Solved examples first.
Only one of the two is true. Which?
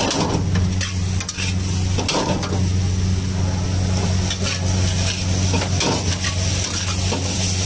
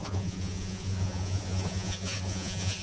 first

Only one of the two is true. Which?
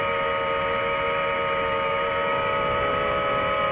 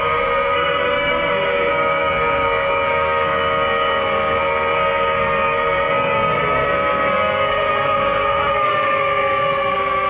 first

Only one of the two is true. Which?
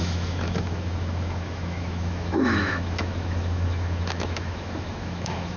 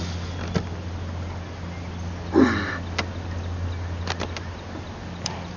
second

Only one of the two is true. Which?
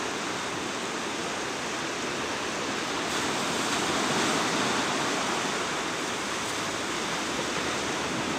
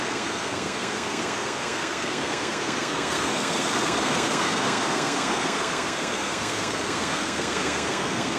first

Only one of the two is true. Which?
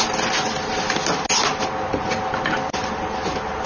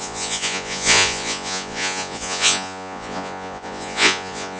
first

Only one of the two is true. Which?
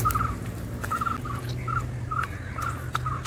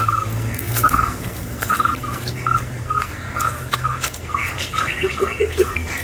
first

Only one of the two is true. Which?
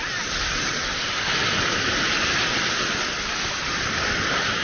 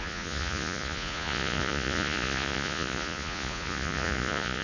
first